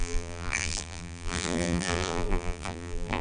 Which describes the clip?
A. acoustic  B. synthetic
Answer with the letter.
B